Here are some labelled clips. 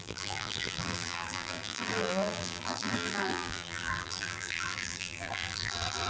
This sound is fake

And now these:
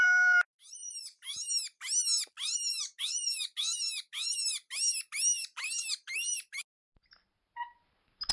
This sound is real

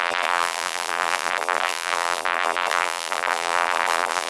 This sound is fake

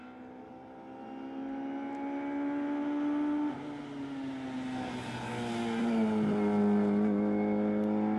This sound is real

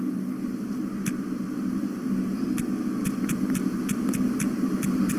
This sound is real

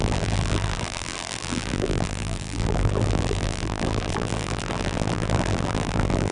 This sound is fake